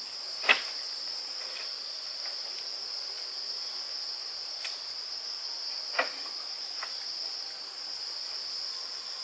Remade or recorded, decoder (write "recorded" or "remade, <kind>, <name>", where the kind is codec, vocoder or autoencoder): recorded